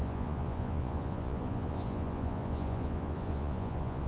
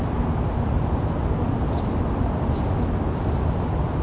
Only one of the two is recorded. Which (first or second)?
second